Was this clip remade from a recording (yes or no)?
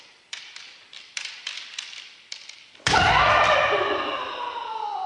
yes